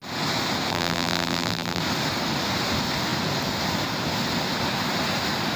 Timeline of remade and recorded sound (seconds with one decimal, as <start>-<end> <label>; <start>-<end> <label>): 0.0-0.7 recorded; 0.7-1.8 remade; 1.8-5.6 recorded